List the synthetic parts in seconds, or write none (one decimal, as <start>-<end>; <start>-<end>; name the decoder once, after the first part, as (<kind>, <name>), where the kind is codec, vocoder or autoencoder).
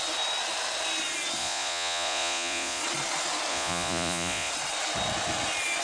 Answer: 1.4-2.8 (vocoder, Vocos); 3.5-4.5